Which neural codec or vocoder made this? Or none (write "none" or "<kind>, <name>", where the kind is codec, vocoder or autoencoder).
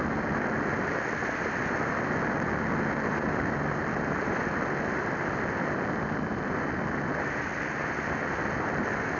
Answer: none